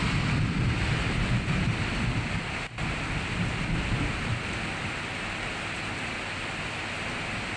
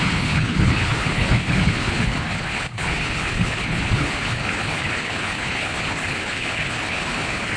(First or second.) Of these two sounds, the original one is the first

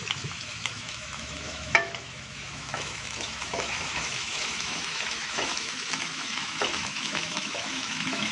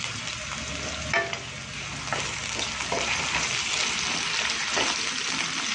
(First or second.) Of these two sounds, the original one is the second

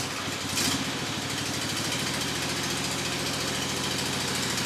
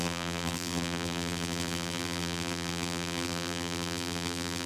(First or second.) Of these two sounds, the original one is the first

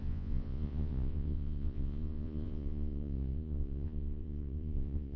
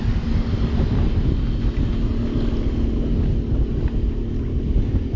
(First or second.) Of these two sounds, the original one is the second